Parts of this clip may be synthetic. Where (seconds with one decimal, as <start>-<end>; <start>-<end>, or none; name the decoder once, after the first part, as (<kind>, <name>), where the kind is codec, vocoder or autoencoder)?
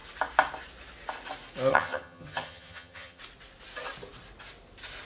1.7-3.2 (vocoder, HiFi-GAN)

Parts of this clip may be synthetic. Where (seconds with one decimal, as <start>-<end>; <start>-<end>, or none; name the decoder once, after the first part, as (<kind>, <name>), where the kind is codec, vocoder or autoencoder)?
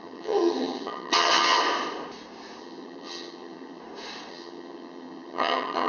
0.0-1.6 (vocoder, HiFi-GAN); 2.6-3.8; 4.3-5.9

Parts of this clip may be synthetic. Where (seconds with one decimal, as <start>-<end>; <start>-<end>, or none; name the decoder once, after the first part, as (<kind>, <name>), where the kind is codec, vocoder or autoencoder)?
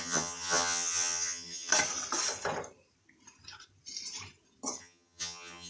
0.0-1.7 (vocoder, HiFi-GAN); 4.8-5.7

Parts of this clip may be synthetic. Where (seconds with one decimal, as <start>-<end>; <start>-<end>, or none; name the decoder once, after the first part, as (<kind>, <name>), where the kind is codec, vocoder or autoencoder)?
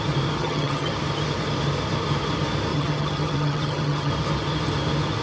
0.4-0.9 (vocoder, HiFi-GAN); 2.7-4.1